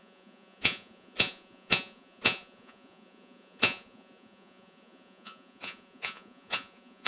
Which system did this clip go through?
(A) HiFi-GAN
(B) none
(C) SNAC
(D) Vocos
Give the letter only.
D